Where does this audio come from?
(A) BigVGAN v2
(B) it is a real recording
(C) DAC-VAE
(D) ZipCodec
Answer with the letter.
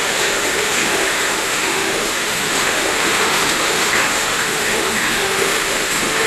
C